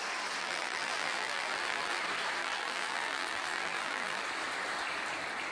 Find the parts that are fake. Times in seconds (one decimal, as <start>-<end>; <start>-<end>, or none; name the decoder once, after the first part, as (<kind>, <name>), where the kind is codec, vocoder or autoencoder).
0.4-2.0 (vocoder, BigVGAN v2); 2.4-4.2